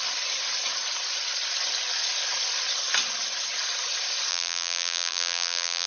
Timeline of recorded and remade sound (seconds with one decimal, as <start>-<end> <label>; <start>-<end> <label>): 0.0-4.3 recorded; 4.3-5.9 remade